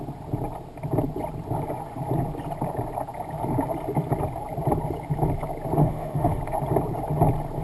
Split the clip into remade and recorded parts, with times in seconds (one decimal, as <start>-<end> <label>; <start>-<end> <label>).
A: 0.0-5.8 recorded; 5.8-6.4 remade; 6.4-7.6 recorded